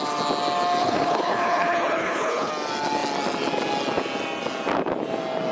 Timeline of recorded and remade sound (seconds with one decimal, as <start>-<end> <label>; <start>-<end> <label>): 0.0-0.8 recorded; 0.8-2.5 remade; 2.5-5.5 recorded